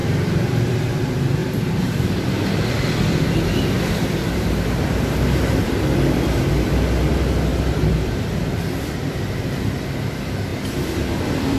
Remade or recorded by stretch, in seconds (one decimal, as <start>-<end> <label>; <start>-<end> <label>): 0.0-0.8 remade; 0.8-1.4 recorded; 1.4-6.5 remade; 6.5-7.5 recorded; 7.5-9.2 remade; 9.2-10.5 recorded; 10.5-11.6 remade